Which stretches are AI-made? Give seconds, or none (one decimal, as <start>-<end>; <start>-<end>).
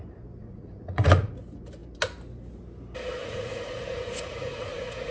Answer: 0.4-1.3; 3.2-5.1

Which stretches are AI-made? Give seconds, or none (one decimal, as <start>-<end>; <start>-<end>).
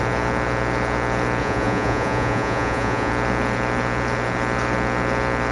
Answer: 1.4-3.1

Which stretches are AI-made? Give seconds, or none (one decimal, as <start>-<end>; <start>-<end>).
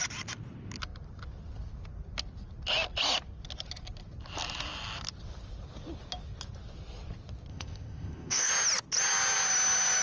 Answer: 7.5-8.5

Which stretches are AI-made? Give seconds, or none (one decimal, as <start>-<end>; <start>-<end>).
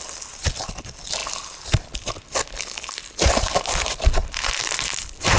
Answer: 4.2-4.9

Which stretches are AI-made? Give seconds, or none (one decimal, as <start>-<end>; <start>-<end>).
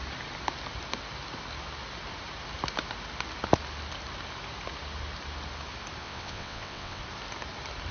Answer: 6.0-7.0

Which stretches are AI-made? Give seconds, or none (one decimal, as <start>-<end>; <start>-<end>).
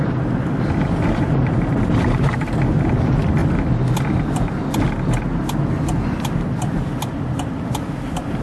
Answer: 1.0-2.5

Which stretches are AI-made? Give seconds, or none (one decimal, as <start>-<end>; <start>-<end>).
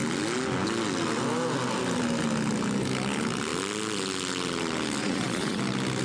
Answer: 5.0-5.6